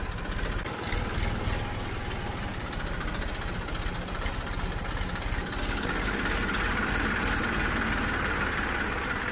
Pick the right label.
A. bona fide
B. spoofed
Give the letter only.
A